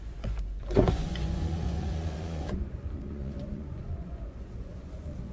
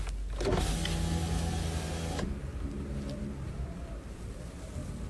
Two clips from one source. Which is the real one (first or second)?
second